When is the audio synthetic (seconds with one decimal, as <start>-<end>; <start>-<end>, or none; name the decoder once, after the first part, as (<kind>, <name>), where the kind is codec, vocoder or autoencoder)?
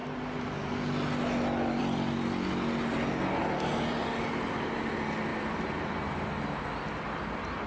5.3-6.5 (vocoder, BigVGAN v2)